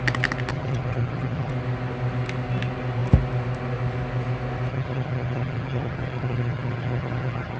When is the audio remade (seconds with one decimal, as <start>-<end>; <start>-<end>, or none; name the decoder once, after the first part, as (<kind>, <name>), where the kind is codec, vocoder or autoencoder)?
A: 0.5-1.5 (vocoder, HiFi-GAN); 4.7-7.6